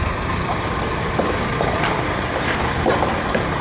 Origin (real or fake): real